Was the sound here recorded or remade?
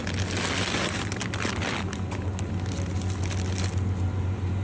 recorded